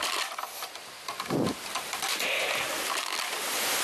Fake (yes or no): yes